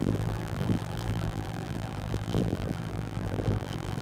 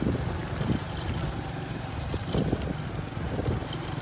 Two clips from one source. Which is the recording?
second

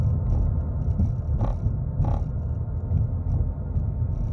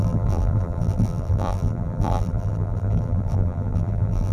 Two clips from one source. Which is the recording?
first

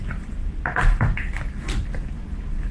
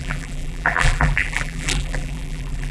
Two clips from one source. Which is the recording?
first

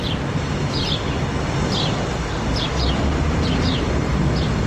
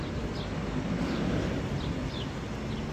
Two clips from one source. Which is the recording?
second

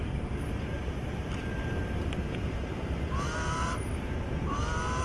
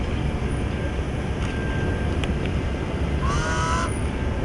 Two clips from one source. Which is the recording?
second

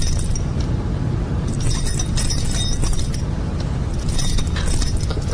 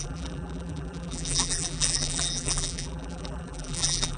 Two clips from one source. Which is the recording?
first